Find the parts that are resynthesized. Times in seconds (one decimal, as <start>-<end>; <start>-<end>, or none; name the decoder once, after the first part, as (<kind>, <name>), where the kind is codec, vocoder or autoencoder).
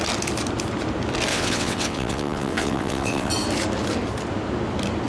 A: 1.3-3.3 (vocoder, WaveNeXt)